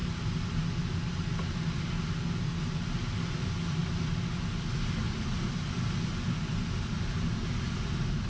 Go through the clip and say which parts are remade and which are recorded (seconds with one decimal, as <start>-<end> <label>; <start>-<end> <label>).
0.0-8.3 recorded